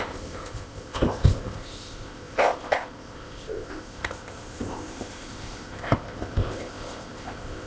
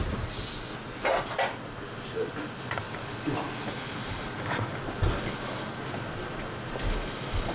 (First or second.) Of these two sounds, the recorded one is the second